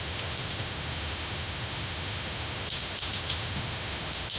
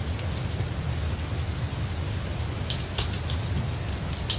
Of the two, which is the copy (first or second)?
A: first